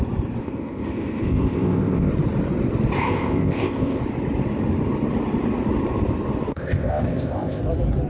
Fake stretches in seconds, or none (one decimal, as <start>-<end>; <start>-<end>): 0.4-2.1; 3.0-4.0; 6.5-7.6